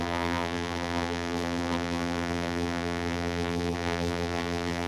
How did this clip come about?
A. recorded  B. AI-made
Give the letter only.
B